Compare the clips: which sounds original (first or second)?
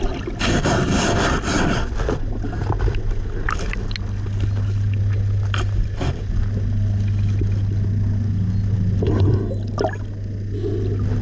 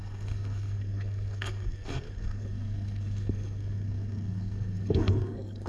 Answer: first